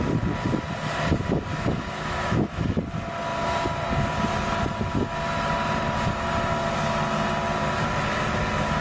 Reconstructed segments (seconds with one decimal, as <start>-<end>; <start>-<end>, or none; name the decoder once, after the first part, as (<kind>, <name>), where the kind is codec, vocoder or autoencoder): 1.5-2.8 (autoencoder, DAC-VAE)